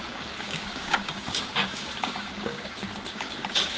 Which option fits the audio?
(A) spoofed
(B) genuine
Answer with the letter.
A